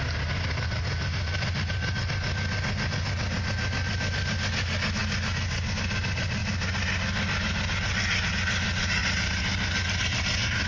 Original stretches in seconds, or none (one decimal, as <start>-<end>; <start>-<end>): 0.0-10.7

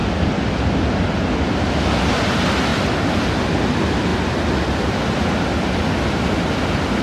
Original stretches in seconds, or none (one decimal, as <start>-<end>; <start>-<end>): 0.0-7.0

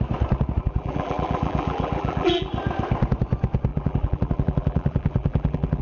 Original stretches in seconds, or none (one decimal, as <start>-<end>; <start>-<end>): 0.0-0.6; 2.5-3.7

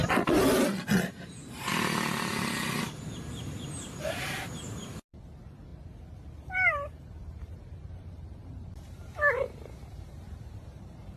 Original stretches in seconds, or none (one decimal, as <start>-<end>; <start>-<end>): 0.0-3.3; 5.7-6.4

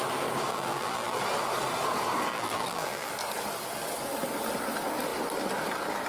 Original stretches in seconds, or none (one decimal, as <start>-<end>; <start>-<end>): 0.0-0.5; 1.2-2.3; 3.1-6.1